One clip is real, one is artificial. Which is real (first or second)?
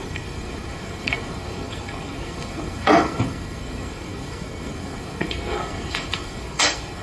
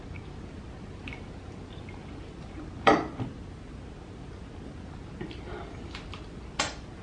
second